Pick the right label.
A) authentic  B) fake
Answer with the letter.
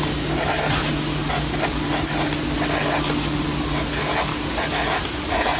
A